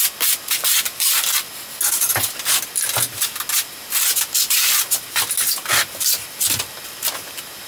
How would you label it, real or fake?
real